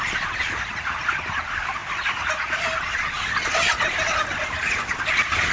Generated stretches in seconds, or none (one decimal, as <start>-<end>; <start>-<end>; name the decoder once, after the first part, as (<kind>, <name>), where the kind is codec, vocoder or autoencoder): none